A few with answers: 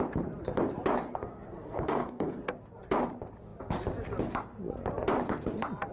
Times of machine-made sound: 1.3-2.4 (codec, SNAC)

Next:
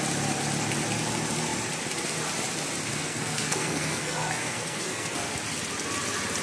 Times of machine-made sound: 2.9-5.4 (codec, SNAC)

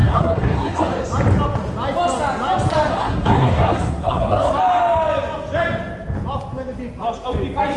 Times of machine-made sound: 0.0-0.9 (codec, SNAC); 2.9-4.5

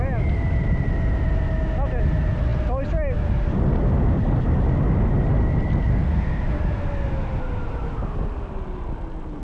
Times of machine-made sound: 5.9-6.6 (codec, SNAC)

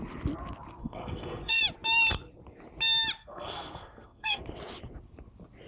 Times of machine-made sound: 0.8-1.6 (codec, SNAC); 3.2-4.4

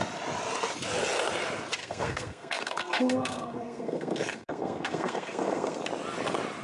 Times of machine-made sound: 1.8-5.8 (codec, SNAC)

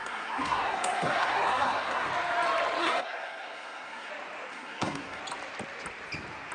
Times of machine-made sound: 0.0-2.1 (codec, SNAC); 2.8-4.1; 4.5-5.2